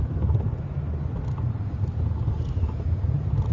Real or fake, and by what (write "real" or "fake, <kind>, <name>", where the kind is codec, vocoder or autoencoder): real